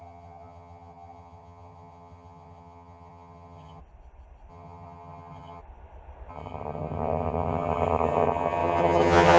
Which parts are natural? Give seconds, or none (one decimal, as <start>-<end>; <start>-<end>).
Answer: 3.8-4.5; 5.6-6.3